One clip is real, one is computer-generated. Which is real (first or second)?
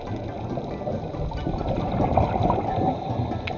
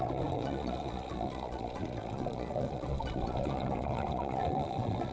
first